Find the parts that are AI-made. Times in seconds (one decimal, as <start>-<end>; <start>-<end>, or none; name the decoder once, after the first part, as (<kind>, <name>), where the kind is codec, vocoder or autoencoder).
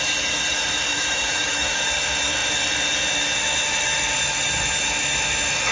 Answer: 0.9-1.8 (autoencoder, DAC-VAE)